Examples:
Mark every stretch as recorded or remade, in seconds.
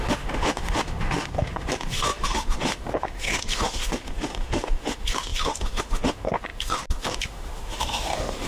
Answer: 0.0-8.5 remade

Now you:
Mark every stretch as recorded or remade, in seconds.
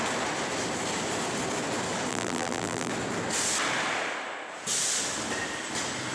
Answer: 0.0-2.1 recorded; 2.1-2.9 remade; 2.9-6.1 recorded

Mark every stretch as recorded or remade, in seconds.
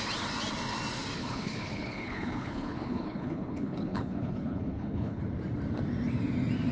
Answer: 0.0-1.2 recorded; 1.2-5.2 remade; 5.2-6.7 recorded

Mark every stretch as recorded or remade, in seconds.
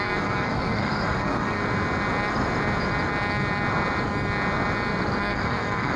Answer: 0.0-1.6 remade; 1.6-5.2 recorded; 5.2-6.0 remade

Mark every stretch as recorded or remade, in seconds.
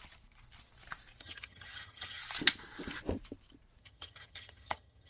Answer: 0.0-1.2 recorded; 1.2-2.2 remade; 2.2-3.8 recorded; 3.8-5.1 remade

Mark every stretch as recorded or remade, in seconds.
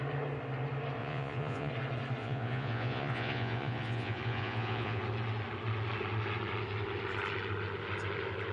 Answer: 0.0-1.0 recorded; 1.0-1.7 remade; 1.7-2.2 recorded; 2.2-5.0 remade; 5.0-8.5 recorded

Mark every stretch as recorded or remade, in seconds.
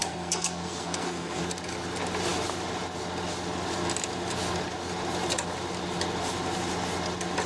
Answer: 0.0-1.4 remade; 1.4-7.5 recorded